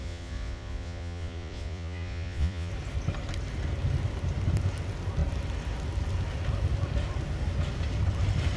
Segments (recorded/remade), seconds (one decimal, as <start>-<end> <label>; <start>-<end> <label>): 0.0-2.7 remade; 2.7-8.6 recorded